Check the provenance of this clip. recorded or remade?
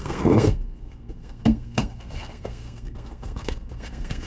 remade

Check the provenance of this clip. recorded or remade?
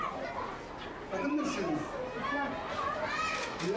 recorded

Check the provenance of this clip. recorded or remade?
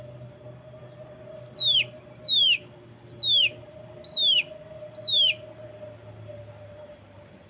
recorded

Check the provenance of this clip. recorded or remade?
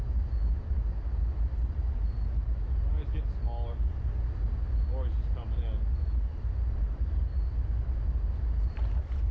recorded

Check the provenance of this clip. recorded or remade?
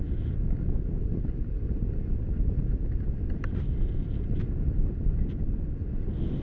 recorded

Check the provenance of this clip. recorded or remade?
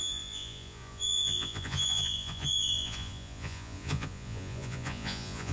remade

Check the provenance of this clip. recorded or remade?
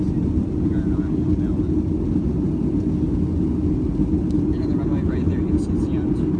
recorded